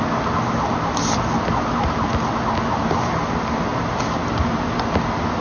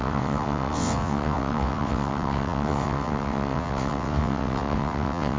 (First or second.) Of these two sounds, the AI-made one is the second